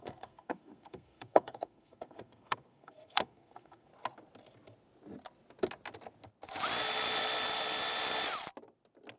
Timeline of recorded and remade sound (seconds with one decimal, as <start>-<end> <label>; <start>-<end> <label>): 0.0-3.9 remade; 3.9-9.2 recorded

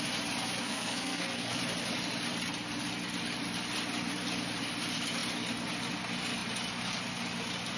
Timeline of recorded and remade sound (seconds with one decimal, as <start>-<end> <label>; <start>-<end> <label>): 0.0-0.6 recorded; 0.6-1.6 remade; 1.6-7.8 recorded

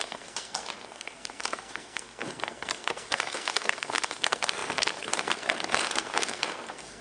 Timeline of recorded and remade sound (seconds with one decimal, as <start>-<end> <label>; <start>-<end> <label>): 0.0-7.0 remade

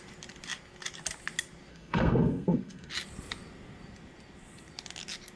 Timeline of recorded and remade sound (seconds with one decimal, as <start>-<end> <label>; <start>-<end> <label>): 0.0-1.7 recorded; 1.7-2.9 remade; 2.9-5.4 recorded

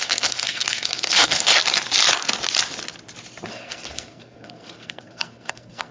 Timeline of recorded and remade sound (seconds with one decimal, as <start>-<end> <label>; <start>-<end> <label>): 0.0-1.5 remade; 1.5-3.5 recorded; 3.5-5.9 remade